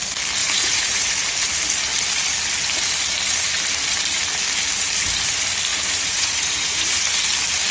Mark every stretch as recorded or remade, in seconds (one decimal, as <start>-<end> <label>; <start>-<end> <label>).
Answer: 0.0-0.4 recorded; 0.4-1.1 remade; 1.1-5.7 recorded; 5.7-7.0 remade; 7.0-7.7 recorded